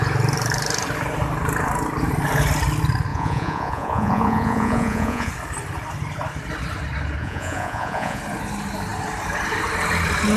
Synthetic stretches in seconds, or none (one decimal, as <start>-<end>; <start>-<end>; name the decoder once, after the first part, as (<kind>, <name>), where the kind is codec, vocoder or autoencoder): 3.1-5.3 (vocoder, Vocos); 7.2-8.2